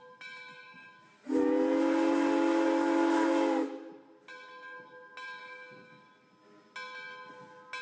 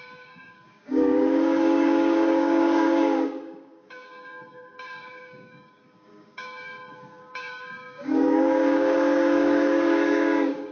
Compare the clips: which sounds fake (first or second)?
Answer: second